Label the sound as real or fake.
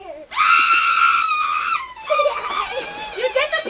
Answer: real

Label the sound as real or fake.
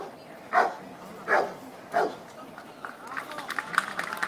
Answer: real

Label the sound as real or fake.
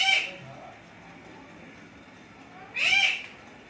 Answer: real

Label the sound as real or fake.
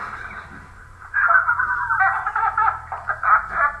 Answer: fake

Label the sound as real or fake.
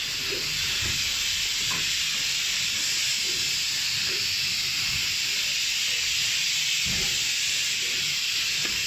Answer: real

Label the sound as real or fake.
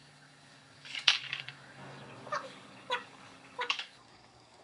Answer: fake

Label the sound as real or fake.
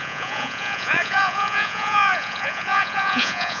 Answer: fake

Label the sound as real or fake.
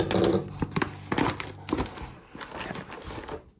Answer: real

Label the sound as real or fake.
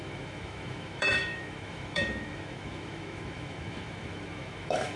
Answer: fake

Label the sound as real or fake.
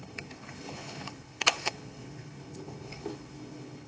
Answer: fake